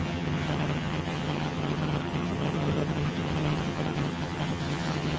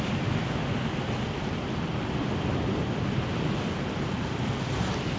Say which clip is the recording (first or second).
second